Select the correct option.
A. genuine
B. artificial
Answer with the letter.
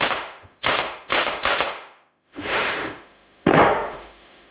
B